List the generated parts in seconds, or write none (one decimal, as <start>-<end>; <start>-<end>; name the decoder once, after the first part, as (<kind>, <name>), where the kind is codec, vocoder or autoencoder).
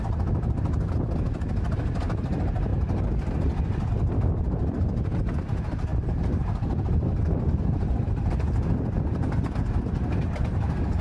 none